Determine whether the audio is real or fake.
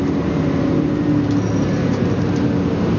real